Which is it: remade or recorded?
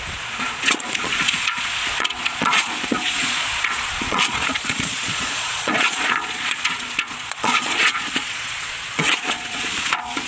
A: remade